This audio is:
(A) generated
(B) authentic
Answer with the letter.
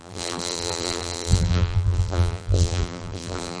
A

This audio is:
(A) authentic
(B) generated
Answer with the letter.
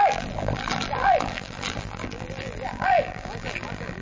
B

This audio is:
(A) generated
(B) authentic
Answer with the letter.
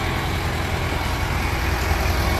B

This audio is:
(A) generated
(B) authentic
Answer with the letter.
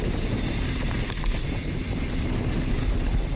B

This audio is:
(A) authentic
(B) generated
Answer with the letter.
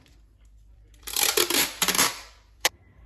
B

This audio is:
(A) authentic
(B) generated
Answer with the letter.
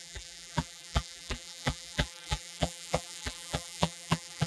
B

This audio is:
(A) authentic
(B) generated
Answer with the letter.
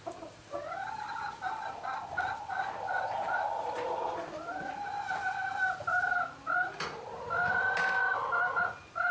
A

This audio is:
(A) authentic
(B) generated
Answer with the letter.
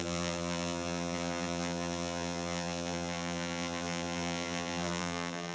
B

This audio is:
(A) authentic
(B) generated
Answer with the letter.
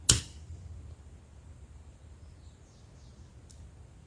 A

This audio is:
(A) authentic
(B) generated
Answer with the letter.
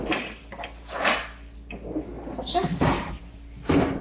A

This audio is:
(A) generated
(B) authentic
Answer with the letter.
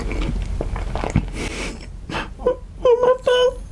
B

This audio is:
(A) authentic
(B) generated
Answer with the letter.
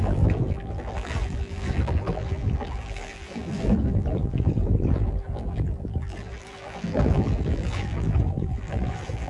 B